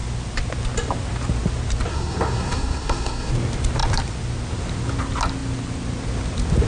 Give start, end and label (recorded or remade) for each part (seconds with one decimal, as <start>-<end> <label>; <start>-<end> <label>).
0.0-1.9 recorded; 1.9-3.3 remade; 3.3-6.7 recorded